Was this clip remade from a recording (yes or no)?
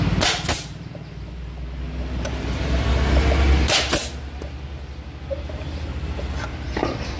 no